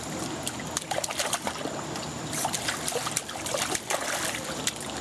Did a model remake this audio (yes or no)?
no